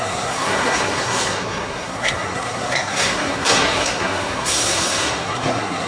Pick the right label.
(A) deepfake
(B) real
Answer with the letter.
A